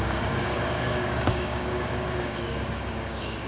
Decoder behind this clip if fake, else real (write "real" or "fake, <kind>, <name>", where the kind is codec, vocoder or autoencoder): fake, codec, DAC